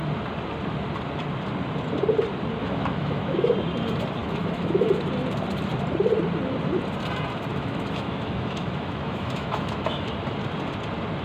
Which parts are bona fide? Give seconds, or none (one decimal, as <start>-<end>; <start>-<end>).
0.0-2.6; 3.5-4.2; 5.0-7.5; 10.1-11.2